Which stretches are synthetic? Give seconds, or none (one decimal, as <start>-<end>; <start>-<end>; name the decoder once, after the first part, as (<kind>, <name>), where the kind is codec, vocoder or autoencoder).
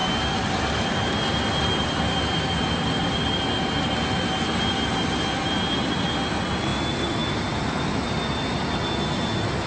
none